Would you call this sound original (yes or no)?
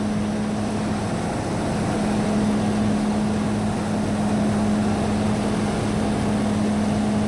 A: yes